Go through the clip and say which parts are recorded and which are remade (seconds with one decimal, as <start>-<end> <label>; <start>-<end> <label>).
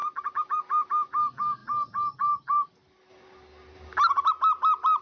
0.0-5.0 recorded